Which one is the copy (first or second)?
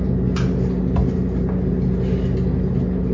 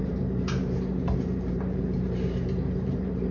second